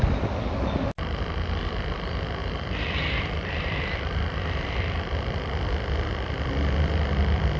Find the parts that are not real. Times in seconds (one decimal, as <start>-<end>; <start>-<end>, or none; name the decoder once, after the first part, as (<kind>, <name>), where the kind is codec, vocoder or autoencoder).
none